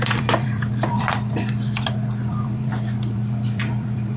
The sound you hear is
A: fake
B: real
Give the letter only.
A